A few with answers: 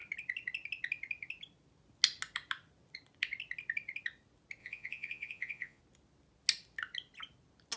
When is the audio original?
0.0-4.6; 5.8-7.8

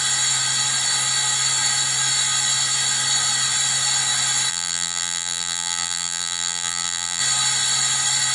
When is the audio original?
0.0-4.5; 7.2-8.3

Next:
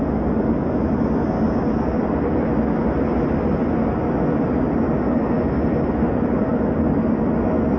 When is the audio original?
0.0-6.5; 7.0-7.8